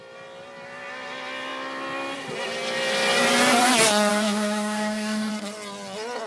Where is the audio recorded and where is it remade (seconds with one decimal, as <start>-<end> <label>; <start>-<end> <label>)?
0.0-4.1 recorded; 4.1-5.3 remade; 5.3-6.3 recorded